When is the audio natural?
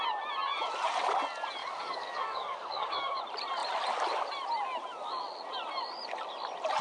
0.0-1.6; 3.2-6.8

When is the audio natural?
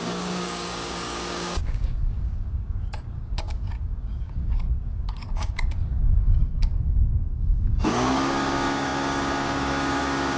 none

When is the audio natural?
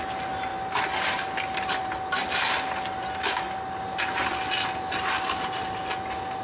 0.0-6.4